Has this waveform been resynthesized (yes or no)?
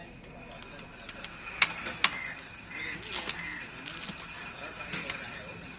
no